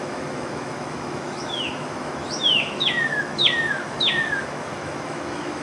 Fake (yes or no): yes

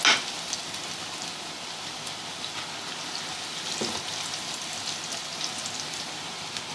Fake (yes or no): no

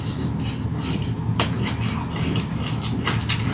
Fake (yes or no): no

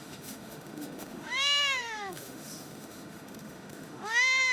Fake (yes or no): yes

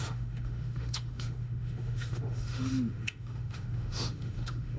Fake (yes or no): yes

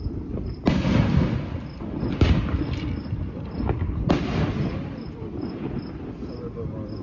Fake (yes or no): no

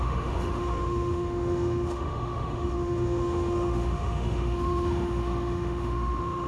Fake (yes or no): yes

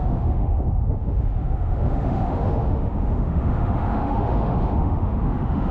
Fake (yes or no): yes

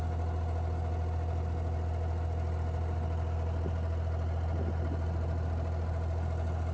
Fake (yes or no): no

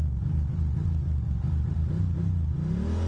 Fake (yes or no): no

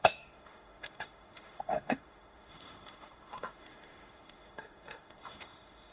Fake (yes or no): yes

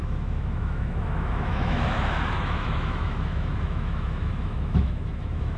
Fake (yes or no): yes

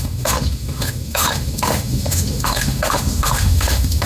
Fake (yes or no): yes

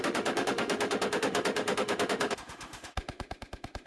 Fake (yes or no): yes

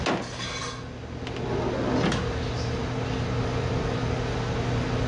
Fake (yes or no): no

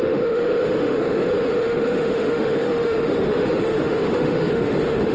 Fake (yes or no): yes